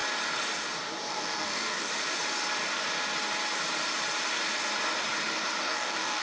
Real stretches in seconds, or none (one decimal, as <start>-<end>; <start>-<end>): 0.0-1.1; 1.9-5.6

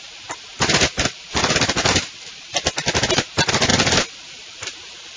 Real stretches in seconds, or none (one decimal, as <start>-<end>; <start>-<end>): 0.0-5.2